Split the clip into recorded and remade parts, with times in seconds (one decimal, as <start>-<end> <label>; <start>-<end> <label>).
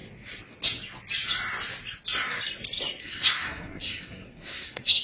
0.0-3.0 recorded; 3.0-5.0 remade